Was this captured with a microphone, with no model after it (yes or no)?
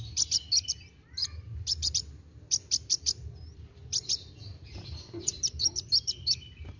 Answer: no